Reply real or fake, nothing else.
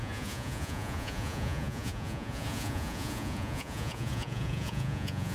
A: fake